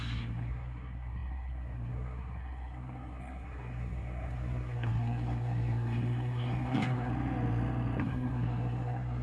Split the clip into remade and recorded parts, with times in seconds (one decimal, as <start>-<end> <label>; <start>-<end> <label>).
0.0-7.1 remade; 7.1-8.0 recorded; 8.0-9.2 remade